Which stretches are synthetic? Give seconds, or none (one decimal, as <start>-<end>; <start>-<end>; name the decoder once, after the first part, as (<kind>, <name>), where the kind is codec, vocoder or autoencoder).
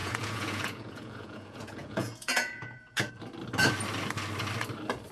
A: 0.0-3.1 (vocoder, Vocos)